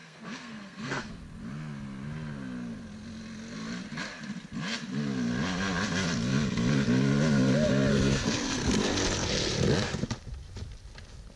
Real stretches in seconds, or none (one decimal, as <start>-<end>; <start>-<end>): 1.1-7.9; 8.7-11.4